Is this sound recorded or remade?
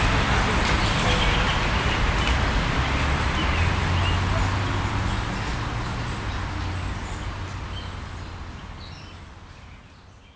recorded